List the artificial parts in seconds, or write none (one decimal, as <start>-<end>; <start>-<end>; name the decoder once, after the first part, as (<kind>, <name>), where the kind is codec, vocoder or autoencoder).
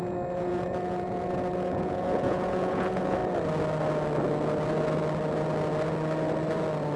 0.0-3.2 (vocoder, Vocos)